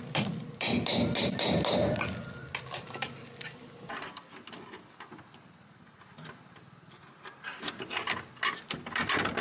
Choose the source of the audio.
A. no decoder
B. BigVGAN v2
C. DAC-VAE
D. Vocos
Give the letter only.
A